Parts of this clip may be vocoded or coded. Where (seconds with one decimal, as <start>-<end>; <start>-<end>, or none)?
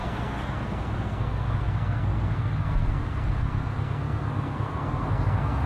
0.0-5.7